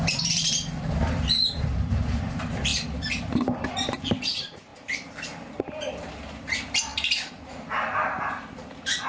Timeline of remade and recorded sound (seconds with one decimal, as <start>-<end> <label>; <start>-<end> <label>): 0.0-4.7 remade; 4.7-6.1 recorded; 6.1-9.1 remade